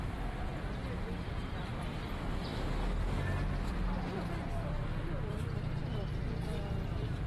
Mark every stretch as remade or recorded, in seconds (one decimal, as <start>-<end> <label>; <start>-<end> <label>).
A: 0.0-0.8 remade; 0.8-1.4 recorded; 1.4-2.5 remade; 2.5-3.6 recorded; 3.6-5.8 remade; 5.8-6.8 recorded; 6.8-7.3 remade